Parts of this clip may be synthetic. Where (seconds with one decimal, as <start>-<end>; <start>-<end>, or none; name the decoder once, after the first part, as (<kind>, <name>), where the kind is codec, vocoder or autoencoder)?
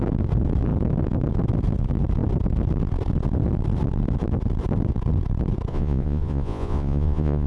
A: 5.7-7.5 (vocoder, Vocos)